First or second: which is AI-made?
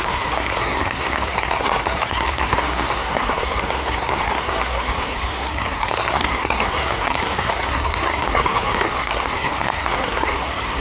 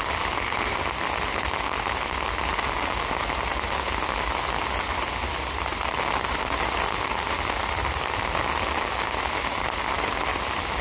first